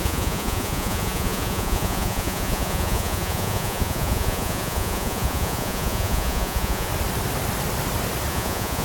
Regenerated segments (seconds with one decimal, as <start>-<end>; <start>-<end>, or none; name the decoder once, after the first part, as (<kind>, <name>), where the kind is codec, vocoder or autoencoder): 0.0-6.9 (vocoder, Vocos); 8.3-8.8